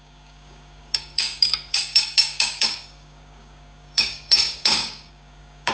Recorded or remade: remade